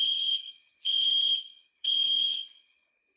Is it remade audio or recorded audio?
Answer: remade